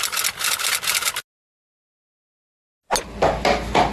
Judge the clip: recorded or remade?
recorded